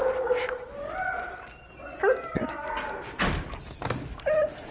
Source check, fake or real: real